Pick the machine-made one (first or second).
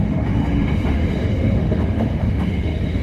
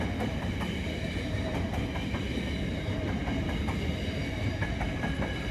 first